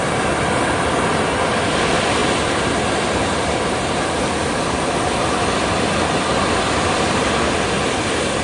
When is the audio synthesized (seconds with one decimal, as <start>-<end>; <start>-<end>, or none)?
none